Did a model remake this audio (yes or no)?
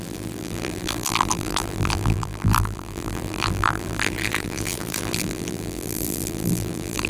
yes